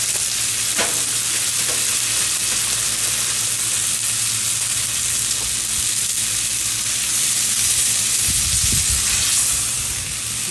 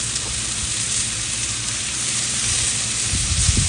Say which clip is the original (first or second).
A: first